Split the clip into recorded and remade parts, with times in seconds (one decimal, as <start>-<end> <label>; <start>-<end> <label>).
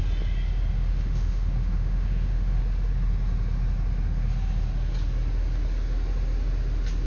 0.0-0.9 recorded; 0.9-2.6 remade; 2.6-7.1 recorded